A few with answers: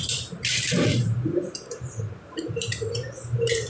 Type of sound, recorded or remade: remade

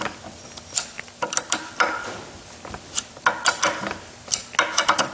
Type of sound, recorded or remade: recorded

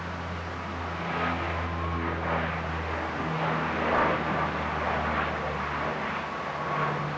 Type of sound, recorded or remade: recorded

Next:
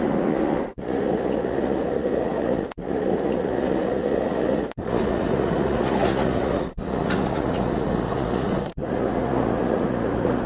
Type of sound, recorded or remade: remade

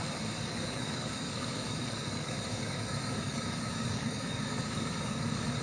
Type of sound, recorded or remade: remade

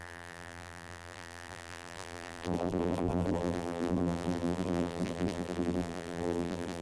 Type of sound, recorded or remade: remade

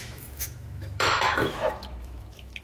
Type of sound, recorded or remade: remade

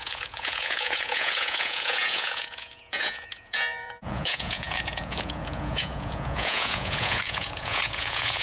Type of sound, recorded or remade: remade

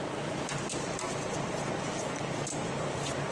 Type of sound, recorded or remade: recorded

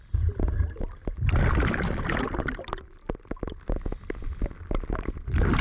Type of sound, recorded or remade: recorded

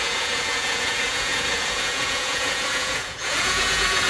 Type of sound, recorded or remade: remade